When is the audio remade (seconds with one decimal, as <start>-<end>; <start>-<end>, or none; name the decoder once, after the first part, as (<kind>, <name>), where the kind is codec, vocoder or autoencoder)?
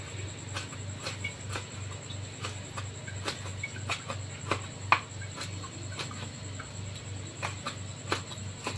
none